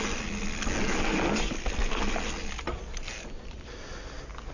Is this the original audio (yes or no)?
yes